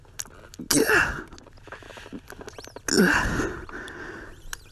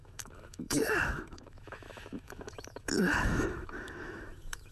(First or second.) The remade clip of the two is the second